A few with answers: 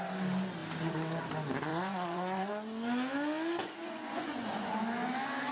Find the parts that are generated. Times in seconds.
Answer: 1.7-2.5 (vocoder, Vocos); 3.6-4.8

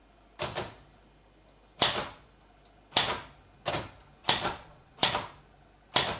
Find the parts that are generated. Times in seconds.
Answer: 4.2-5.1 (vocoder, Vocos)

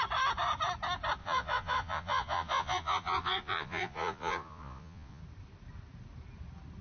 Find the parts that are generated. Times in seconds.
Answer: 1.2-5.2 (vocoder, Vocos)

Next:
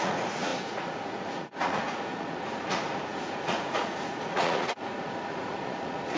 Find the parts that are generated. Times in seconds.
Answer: 0.0-6.2 (vocoder, Vocos)